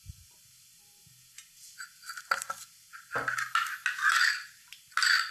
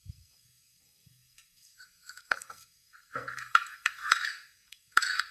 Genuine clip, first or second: first